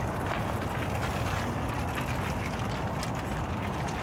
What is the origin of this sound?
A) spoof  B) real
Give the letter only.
B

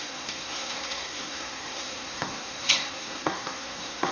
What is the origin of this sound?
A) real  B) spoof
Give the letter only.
B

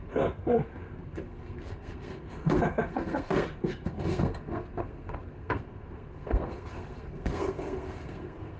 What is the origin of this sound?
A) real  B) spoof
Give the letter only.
B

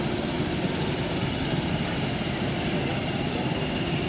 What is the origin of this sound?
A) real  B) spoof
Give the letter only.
A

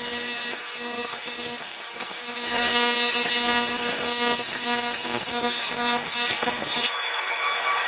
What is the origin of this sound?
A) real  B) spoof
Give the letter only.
B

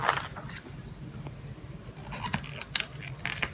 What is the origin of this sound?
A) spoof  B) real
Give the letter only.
B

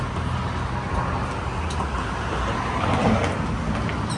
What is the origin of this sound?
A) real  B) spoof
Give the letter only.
A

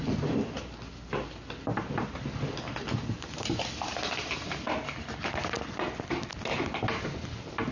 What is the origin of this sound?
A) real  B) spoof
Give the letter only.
A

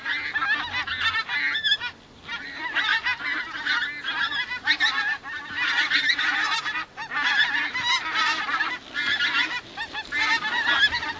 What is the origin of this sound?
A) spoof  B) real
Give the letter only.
B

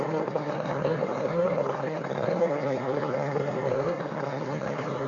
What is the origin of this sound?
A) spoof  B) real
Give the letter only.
A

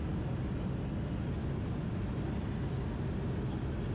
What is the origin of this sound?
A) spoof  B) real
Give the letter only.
B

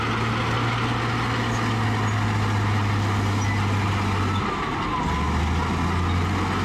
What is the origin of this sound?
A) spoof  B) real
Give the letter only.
B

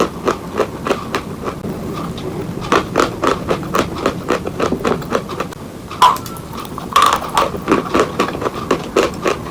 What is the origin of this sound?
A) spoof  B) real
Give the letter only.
B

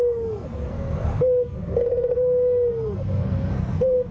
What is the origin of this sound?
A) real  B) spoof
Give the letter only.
B